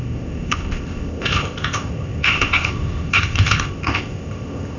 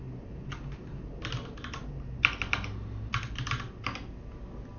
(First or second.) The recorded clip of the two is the second